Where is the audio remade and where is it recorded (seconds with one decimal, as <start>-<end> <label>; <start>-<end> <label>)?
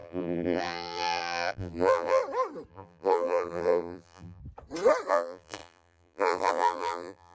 0.0-2.2 remade; 2.2-2.7 recorded; 2.7-4.4 remade; 4.4-5.1 recorded; 5.1-7.3 remade